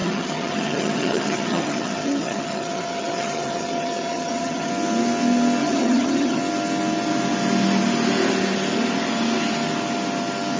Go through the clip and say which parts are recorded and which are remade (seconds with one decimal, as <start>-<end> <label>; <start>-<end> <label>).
0.0-4.7 remade; 4.7-5.6 recorded; 5.6-6.4 remade; 6.4-10.6 recorded